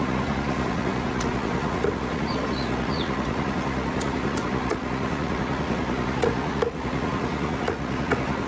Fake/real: fake